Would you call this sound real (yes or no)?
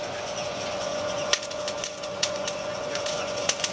no